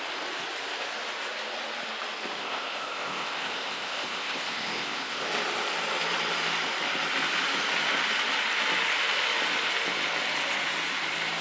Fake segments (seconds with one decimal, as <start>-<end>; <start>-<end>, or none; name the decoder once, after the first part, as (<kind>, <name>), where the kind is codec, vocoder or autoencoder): 2.4-5.3 (codec, ZipCodec)

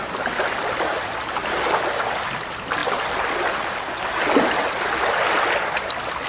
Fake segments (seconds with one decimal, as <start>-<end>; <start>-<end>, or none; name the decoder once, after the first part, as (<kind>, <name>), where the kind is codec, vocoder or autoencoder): none

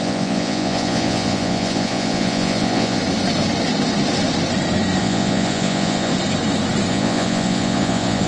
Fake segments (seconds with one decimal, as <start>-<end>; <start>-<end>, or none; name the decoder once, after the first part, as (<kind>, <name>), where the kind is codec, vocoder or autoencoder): 0.0-3.0 (vocoder, Vocos); 5.0-6.1; 6.9-8.3

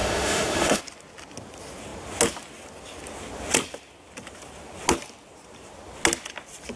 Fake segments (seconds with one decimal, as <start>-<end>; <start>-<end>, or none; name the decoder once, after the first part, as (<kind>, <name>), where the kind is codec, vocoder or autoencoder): 0.0-0.8 (autoencoder, DAC-VAE)